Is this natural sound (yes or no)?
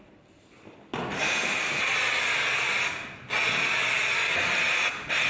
yes